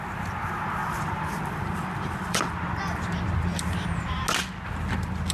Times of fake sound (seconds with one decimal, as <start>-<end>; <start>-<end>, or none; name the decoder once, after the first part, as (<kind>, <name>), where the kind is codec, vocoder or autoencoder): 0.8-2.5 (vocoder, BigVGAN v2)